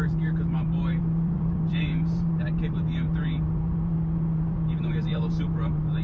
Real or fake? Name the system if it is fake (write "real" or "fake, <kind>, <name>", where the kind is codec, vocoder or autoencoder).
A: fake, vocoder, BigVGAN v2